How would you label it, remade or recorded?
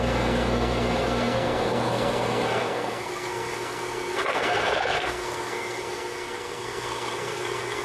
remade